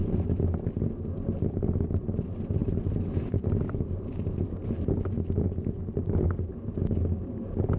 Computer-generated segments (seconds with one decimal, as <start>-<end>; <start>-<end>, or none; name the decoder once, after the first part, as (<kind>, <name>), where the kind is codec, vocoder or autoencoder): 2.6-3.7 (vocoder, BigVGAN v2)

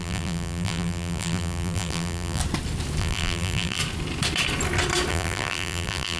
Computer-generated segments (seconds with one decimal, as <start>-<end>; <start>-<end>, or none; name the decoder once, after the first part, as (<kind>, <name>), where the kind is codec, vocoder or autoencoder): 0.0-2.4 (vocoder, BigVGAN v2); 3.0-3.8; 5.1-6.2

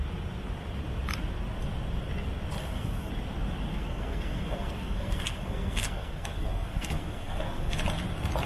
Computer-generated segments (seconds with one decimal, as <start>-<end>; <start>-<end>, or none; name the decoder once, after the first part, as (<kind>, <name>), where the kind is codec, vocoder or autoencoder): 2.6-3.1 (codec, SNAC); 3.7-7.8

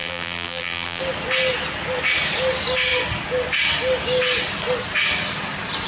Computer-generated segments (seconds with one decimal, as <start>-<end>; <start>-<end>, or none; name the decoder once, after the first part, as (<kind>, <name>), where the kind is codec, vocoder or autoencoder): 0.0-1.0 (vocoder, BigVGAN v2)

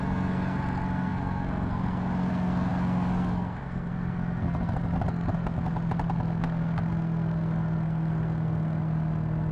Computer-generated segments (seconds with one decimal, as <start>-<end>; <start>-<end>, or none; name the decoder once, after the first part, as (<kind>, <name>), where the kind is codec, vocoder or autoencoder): 0.0-9.5 (codec, SNAC)

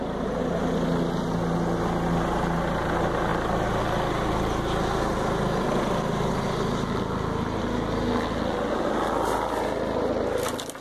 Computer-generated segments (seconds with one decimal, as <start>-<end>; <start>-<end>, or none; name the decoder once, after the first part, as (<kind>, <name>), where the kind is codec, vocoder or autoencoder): none